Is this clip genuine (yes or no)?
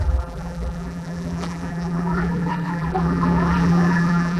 no